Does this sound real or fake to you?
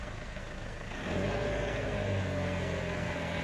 fake